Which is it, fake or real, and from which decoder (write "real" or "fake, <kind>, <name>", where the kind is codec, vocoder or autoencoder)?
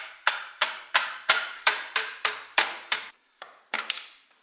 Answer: fake, vocoder, BigVGAN v2